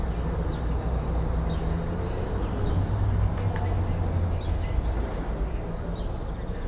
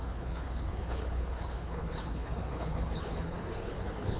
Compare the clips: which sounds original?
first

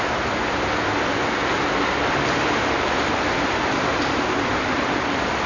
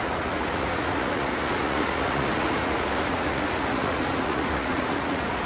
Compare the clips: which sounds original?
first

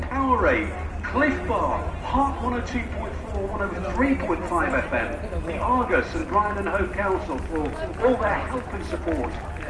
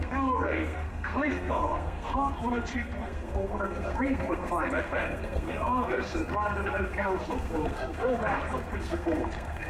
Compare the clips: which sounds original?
first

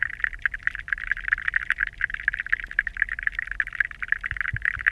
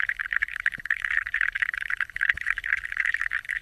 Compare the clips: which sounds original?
first